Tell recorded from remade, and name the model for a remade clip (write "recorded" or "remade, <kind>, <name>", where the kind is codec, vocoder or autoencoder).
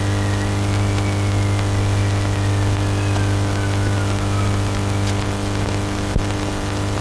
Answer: recorded